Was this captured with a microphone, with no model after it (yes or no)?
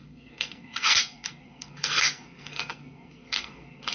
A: no